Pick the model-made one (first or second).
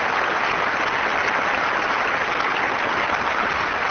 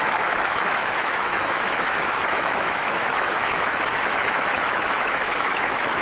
second